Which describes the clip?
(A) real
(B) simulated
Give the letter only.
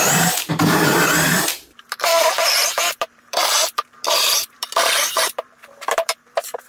B